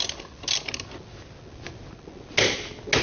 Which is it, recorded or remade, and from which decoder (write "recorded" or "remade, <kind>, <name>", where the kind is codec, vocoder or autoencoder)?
recorded